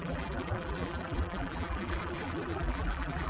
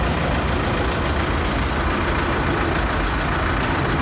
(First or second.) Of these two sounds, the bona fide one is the second